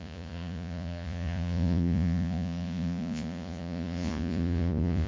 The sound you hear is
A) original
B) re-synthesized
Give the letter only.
B